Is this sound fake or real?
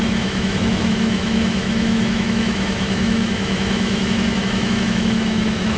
fake